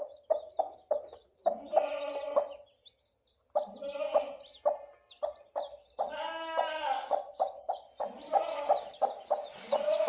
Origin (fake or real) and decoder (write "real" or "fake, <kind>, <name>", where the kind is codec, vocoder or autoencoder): real